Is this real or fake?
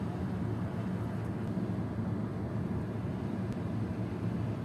real